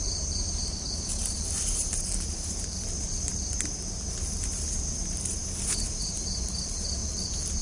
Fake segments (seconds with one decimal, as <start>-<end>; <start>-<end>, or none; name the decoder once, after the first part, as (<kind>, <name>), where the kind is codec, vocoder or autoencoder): 0.0-3.3 (vocoder, BigVGAN v2); 4.4-7.0

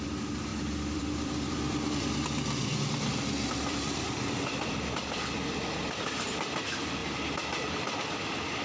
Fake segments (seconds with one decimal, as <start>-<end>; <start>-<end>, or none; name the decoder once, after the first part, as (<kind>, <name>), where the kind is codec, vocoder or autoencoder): 0.0-7.0 (vocoder, BigVGAN v2); 8.0-8.6

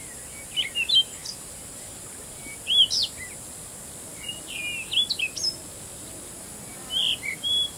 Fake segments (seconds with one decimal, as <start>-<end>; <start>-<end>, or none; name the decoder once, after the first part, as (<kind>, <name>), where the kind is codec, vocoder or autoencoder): 1.2-2.0 (vocoder, BigVGAN v2); 7.0-7.8

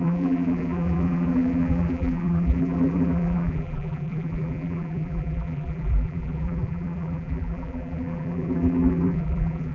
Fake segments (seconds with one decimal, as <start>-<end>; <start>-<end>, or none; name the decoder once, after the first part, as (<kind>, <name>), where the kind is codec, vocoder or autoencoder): 0.0-9.7 (vocoder, BigVGAN v2)